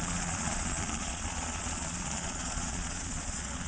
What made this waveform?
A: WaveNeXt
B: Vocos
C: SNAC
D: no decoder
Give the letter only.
B